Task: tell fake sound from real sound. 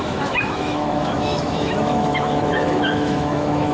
fake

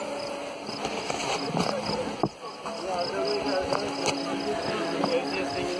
real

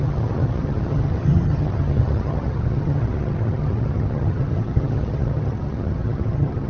fake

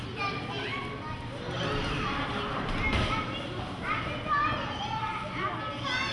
real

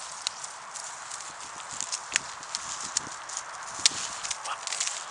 real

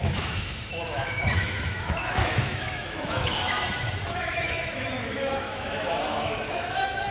fake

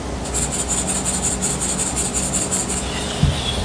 real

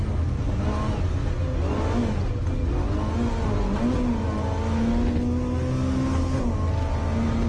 real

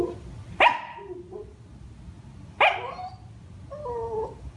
real